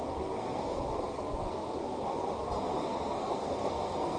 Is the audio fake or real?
fake